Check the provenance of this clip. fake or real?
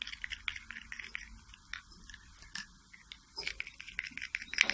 real